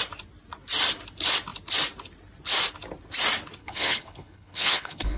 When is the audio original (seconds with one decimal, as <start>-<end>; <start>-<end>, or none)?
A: 0.0-3.6